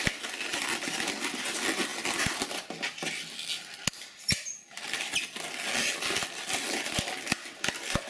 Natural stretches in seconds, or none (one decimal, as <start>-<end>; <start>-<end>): 0.0-8.1